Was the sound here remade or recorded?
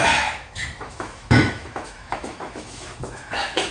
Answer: remade